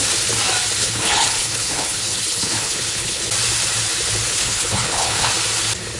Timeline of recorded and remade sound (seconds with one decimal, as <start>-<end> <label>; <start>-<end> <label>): 0.0-0.8 recorded; 0.8-3.2 remade; 3.2-4.3 recorded; 4.3-5.3 remade; 5.3-6.0 recorded